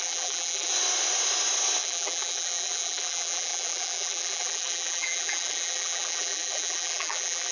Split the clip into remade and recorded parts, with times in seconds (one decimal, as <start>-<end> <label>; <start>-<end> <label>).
0.0-0.7 remade; 0.7-1.8 recorded; 1.8-7.5 remade